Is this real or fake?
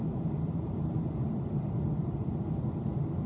real